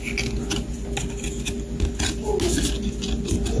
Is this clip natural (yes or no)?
yes